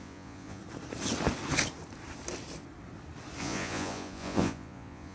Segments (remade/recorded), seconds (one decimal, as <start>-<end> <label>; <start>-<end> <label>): 0.0-0.6 remade; 0.6-3.4 recorded; 3.4-5.1 remade